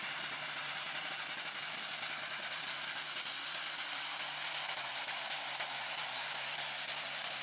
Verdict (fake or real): fake